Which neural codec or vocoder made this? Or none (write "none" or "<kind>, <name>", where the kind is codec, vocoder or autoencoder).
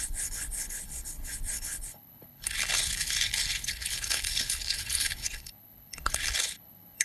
codec, HILCodec